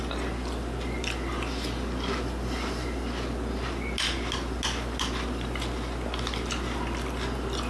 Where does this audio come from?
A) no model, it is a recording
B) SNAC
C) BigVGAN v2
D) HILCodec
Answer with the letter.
A